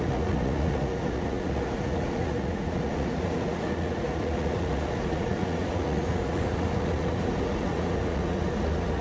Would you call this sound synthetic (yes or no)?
yes